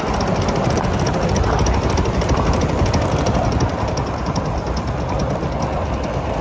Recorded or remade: recorded